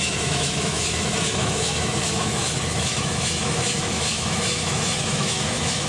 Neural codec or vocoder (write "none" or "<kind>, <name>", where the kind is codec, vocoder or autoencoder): autoencoder, DAC-VAE